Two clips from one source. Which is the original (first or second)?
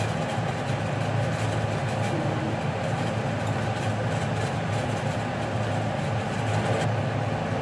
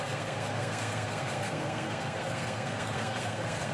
first